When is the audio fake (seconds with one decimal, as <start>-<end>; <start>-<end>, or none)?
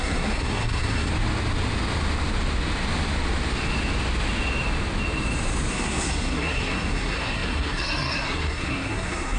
0.0-1.1; 5.7-9.4